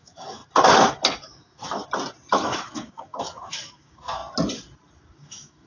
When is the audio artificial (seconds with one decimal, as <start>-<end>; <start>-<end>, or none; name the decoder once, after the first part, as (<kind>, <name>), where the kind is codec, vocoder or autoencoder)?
0.0-0.4 (autoencoder, DAC-VAE); 1.2-1.8; 2.3-4.2; 5.2-5.7